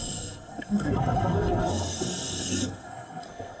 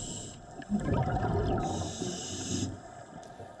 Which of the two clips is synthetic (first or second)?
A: first